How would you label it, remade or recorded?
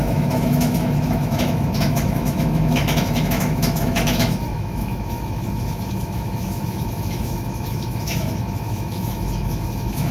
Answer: remade